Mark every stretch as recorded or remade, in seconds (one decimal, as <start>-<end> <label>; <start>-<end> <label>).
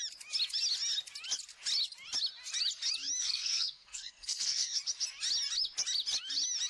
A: 0.0-3.2 recorded; 3.2-4.8 remade; 4.8-6.7 recorded